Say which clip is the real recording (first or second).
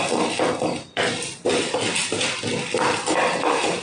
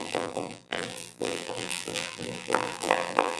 first